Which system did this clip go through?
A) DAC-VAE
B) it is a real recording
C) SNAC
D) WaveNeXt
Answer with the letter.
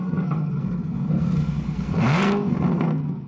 C